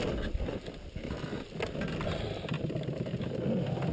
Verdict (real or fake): real